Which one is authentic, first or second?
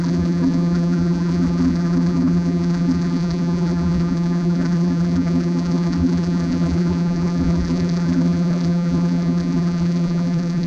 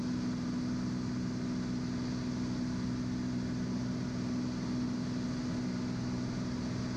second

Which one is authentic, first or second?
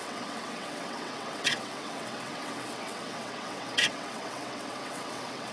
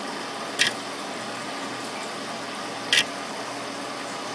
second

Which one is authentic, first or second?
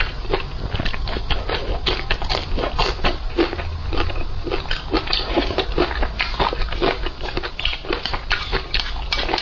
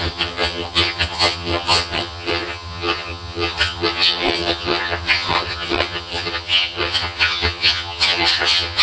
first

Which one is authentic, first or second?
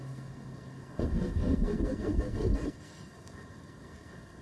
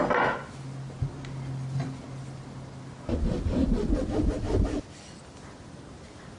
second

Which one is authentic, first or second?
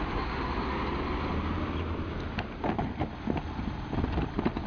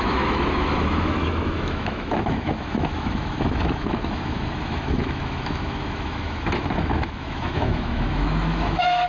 first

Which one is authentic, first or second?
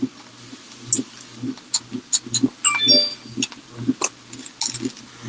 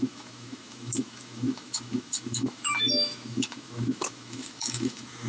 first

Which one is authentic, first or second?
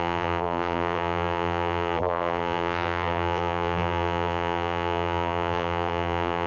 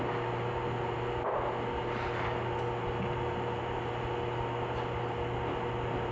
second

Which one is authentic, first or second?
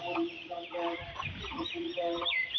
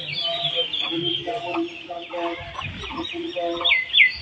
second